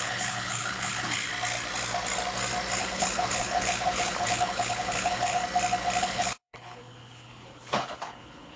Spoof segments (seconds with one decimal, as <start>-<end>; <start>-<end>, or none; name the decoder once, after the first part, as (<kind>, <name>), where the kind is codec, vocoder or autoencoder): 0.0-1.3 (codec, HILCodec); 2.8-5.4; 6.0-8.6